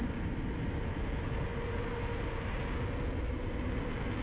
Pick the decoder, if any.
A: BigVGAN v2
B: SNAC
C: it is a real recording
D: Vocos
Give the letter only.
C